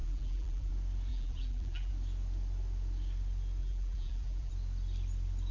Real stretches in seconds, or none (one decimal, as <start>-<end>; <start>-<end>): 0.7-1.1; 1.9-3.6; 4.5-5.5